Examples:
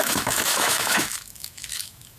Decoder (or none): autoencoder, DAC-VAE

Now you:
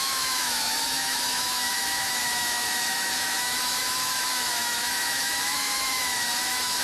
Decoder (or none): autoencoder, DAC-VAE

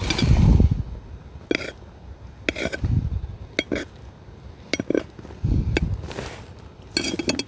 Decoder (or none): none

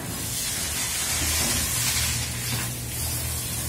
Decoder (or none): none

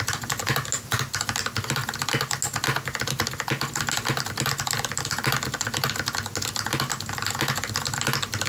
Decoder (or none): none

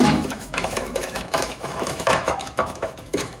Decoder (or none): autoencoder, DAC-VAE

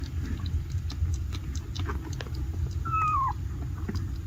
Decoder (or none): none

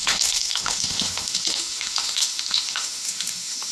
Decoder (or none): autoencoder, DAC-VAE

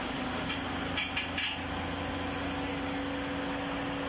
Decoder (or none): none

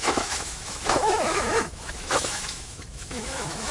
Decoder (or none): autoencoder, DAC-VAE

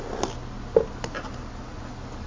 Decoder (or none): none